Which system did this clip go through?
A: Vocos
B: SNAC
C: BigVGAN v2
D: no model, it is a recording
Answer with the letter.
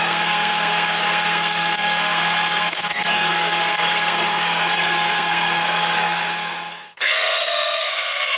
B